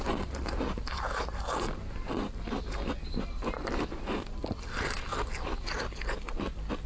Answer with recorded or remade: recorded